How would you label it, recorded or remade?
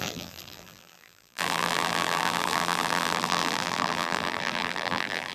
remade